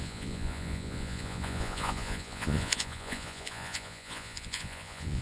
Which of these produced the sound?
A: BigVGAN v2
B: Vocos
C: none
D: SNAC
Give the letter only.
B